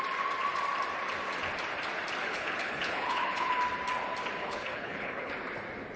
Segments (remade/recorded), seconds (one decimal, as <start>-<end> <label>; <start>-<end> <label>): 0.0-2.2 recorded; 2.2-3.5 remade; 3.5-4.4 recorded; 4.4-5.3 remade; 5.3-6.0 recorded

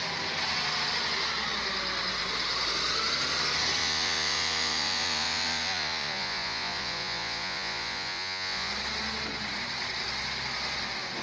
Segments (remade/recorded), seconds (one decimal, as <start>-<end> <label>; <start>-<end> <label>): 0.0-3.8 recorded; 3.8-8.7 remade; 8.7-11.2 recorded

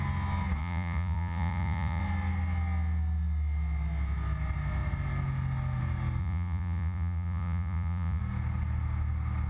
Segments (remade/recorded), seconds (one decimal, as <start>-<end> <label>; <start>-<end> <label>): 0.0-0.6 recorded; 0.6-2.0 remade; 2.0-6.2 recorded; 6.2-8.2 remade; 8.2-9.5 recorded

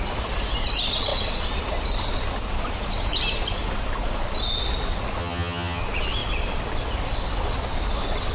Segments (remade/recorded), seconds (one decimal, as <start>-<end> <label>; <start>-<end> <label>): 0.0-5.2 recorded; 5.2-5.8 remade; 5.8-8.3 recorded

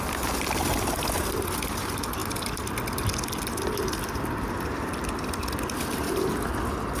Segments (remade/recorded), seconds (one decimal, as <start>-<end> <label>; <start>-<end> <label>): 0.0-7.0 recorded

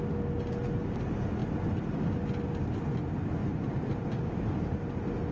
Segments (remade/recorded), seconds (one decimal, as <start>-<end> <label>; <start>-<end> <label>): 0.0-3.4 recorded; 3.4-4.2 remade; 4.2-5.3 recorded

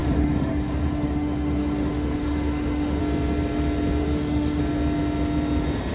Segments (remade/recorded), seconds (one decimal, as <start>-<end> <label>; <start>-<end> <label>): 0.0-3.0 remade; 3.0-4.0 recorded; 4.0-4.6 remade; 4.6-5.9 recorded